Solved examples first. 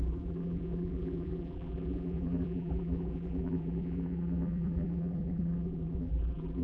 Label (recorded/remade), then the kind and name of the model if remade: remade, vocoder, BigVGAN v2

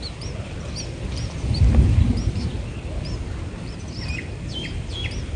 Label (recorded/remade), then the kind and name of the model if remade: recorded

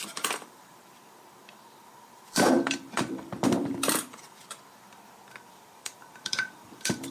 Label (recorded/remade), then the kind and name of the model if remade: remade, vocoder, BigVGAN v2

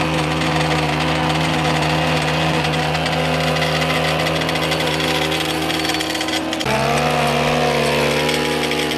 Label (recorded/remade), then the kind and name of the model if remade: recorded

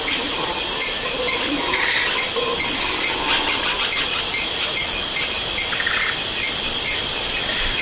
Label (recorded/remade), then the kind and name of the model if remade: recorded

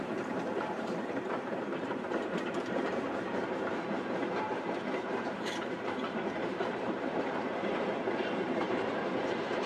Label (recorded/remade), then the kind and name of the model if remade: remade, vocoder, BigVGAN v2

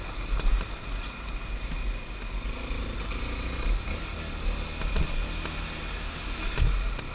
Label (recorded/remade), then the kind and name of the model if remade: recorded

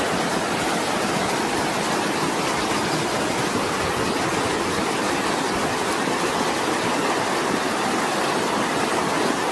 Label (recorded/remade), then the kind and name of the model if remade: recorded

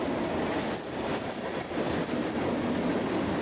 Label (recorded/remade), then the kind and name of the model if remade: recorded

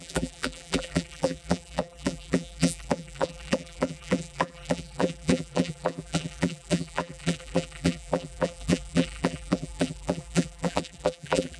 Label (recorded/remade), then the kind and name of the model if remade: remade, vocoder, BigVGAN v2